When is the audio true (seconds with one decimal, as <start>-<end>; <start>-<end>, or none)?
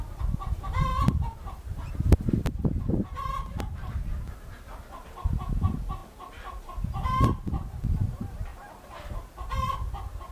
0.0-0.9; 3.9-8.5; 9.1-10.3